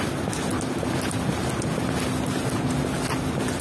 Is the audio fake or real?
real